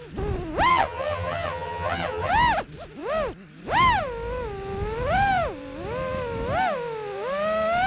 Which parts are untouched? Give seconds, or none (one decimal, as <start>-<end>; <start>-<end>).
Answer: 0.0-0.7; 2.3-7.9